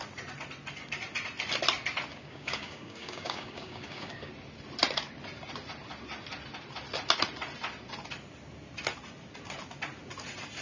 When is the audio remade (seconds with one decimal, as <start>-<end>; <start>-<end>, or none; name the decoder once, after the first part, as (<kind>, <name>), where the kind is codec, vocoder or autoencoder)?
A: 2.1-4.3 (codec, DAC)

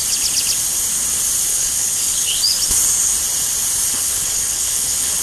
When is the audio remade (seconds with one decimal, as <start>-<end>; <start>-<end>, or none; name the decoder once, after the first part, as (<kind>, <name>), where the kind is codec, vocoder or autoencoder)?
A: 1.5-2.4 (codec, HILCodec); 3.9-5.2

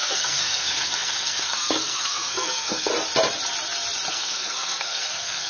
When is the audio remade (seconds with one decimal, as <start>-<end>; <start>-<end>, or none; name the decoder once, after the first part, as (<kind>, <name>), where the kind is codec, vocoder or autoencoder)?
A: 0.0-2.9 (codec, SNAC); 4.1-5.5

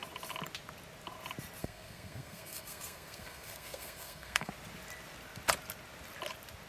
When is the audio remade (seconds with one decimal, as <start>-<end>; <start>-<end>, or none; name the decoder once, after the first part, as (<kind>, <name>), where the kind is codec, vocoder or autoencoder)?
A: 1.6-4.5 (codec, SNAC)

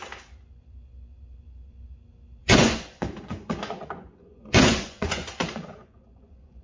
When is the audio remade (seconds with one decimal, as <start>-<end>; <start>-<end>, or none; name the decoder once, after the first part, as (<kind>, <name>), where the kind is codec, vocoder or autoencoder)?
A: 2.4-6.6 (vocoder, Vocos)